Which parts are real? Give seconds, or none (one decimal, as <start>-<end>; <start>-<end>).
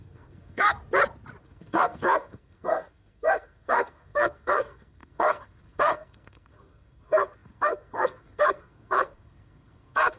0.8-1.4